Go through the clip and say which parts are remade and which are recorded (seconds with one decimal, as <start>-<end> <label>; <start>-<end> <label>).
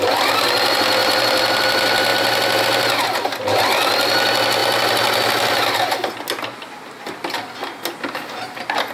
0.0-8.9 recorded